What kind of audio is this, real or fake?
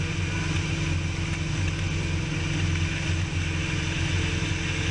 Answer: real